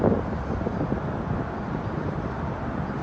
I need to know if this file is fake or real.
real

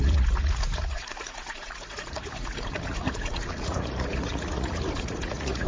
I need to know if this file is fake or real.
fake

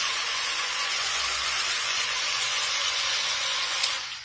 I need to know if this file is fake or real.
fake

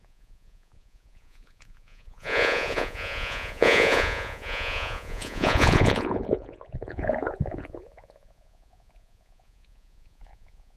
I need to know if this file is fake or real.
fake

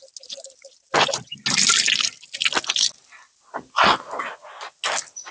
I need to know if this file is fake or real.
real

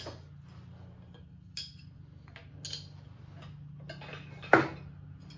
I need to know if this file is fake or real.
real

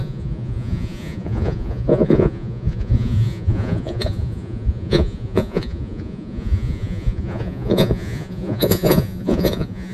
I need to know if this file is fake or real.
fake